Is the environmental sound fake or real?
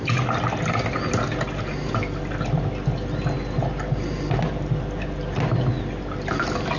real